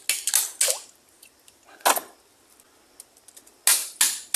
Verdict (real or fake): real